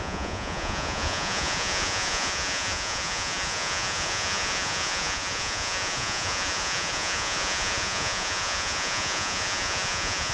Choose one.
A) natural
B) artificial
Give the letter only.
B